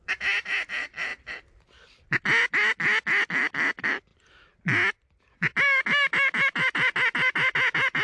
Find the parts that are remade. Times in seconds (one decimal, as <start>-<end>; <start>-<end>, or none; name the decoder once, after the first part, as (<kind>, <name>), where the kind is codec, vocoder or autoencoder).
none